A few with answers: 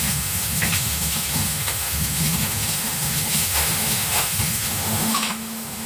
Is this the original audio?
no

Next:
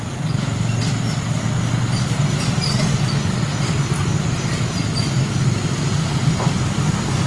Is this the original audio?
yes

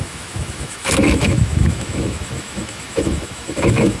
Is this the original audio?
no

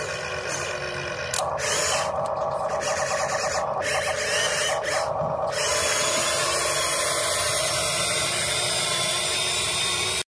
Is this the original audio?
yes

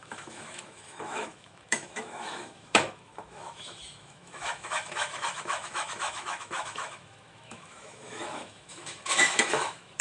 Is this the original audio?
no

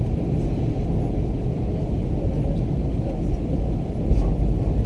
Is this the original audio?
yes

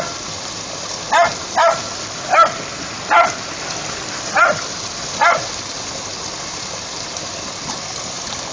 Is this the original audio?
yes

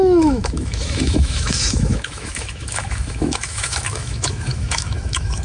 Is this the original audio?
no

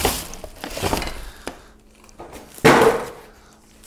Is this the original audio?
yes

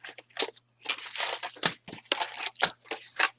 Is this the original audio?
yes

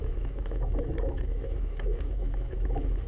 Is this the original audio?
no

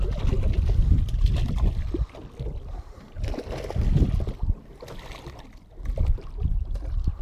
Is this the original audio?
yes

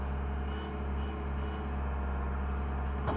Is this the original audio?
yes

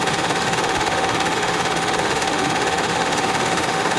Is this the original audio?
no